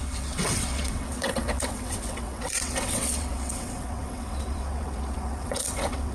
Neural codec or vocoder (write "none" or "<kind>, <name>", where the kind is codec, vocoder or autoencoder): vocoder, WaveNeXt